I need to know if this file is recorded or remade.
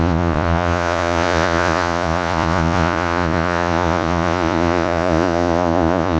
remade